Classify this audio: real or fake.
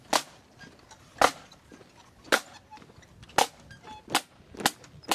real